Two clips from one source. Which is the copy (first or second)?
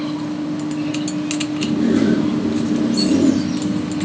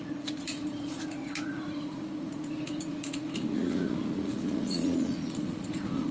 second